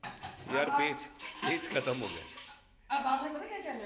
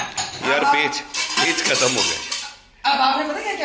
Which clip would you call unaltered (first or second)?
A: second